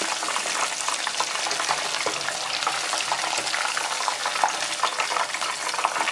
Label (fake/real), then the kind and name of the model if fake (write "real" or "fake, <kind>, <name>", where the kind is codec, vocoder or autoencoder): real